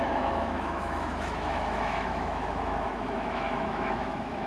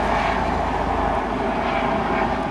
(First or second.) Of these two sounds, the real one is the second